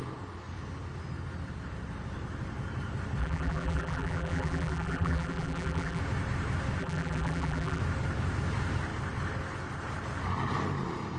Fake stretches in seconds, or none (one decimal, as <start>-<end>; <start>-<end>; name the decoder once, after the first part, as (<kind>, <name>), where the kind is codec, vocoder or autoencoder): 3.2-6.0 (vocoder, BigVGAN v2); 6.8-7.8

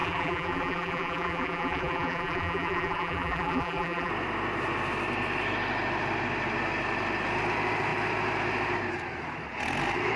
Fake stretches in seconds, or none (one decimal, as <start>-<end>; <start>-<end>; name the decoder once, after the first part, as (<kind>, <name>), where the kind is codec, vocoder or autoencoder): 0.0-4.1 (vocoder, BigVGAN v2)

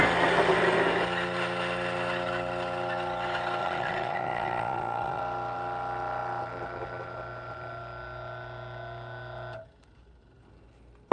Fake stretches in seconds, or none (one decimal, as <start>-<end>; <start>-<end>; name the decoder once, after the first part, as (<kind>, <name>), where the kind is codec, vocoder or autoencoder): 3.6-5.2 (vocoder, Vocos)

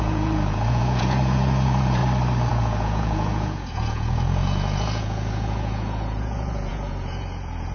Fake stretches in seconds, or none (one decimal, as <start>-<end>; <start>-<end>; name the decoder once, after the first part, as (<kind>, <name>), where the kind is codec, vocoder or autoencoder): 0.0-2.0 (vocoder, Vocos); 2.5-7.7